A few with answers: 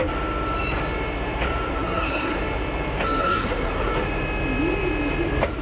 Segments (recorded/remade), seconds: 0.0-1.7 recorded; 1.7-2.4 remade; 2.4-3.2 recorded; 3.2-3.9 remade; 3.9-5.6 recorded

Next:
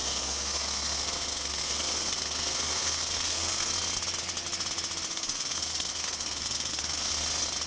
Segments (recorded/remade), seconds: 0.0-3.7 remade; 3.7-5.1 recorded; 5.1-7.1 remade; 7.1-7.7 recorded

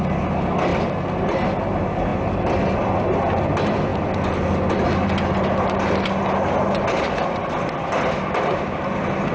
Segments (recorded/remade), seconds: 0.0-9.3 recorded